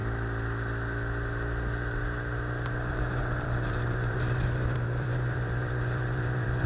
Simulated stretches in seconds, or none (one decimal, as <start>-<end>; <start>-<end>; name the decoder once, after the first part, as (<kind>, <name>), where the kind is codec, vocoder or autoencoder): 2.9-6.7 (vocoder, BigVGAN v2)